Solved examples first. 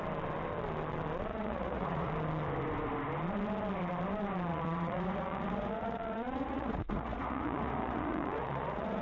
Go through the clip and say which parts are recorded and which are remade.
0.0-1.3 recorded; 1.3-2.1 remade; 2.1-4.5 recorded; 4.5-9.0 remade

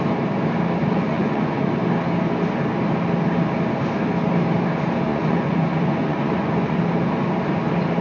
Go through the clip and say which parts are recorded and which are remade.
0.0-0.8 recorded; 0.8-1.7 remade; 1.7-5.1 recorded; 5.1-6.8 remade; 6.8-8.0 recorded

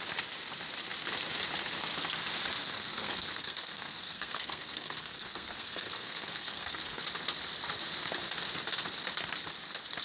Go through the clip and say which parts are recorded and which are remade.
0.0-2.6 recorded; 2.6-7.0 remade; 7.0-10.0 recorded

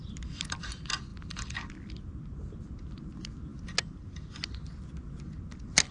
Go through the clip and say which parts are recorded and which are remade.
0.0-5.9 recorded

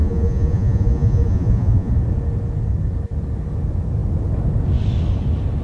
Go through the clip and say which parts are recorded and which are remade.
0.0-1.9 remade; 1.9-5.6 recorded

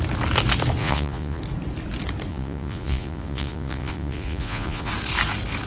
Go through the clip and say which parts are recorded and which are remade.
0.0-0.8 recorded; 0.8-1.4 remade; 1.4-2.3 recorded; 2.3-4.9 remade; 4.9-5.7 recorded

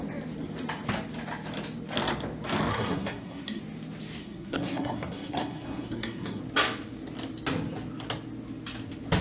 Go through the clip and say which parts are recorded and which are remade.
0.0-2.7 recorded; 2.7-3.6 remade; 3.6-4.2 recorded; 4.2-6.4 remade; 6.4-9.2 recorded

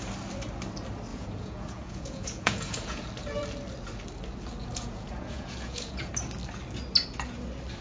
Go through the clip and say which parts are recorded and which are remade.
0.0-1.1 recorded; 1.1-3.1 remade; 3.1-4.6 recorded; 4.6-6.1 remade; 6.1-7.8 recorded